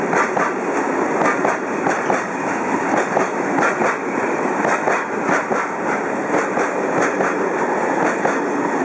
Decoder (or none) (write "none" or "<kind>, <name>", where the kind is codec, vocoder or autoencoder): none